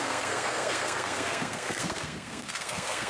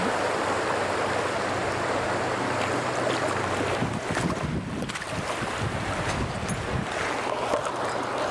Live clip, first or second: second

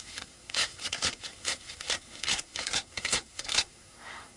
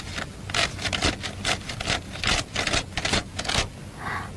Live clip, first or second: second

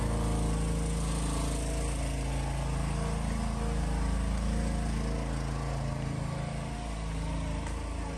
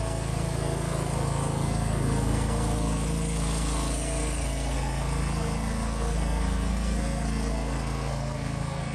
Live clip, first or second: first